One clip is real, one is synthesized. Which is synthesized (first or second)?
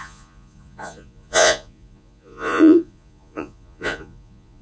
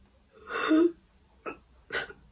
first